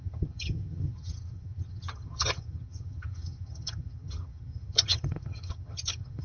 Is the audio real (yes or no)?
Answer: no